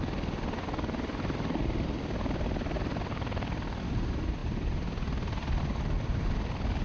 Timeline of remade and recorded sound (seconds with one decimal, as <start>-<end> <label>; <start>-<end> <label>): 0.0-6.8 recorded

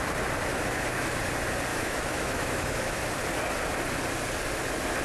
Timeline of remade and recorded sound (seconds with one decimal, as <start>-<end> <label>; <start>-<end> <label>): 0.0-0.5 recorded; 0.5-1.2 remade; 1.2-1.7 recorded; 1.7-3.0 remade; 3.0-5.0 recorded

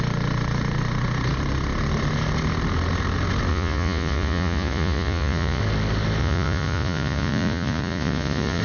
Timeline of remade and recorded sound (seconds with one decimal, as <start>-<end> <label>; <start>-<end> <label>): 0.0-3.5 recorded; 3.5-5.6 remade; 5.6-6.2 recorded; 6.2-8.6 remade

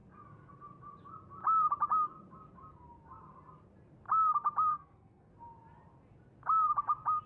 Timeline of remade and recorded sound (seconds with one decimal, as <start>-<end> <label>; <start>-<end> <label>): 0.0-4.7 recorded; 4.7-5.3 remade; 5.3-7.3 recorded